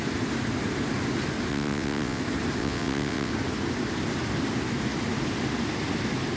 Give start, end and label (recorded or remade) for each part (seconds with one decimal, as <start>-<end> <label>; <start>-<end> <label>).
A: 0.0-1.5 recorded; 1.5-2.2 remade; 2.2-2.6 recorded; 2.6-3.3 remade; 3.3-6.4 recorded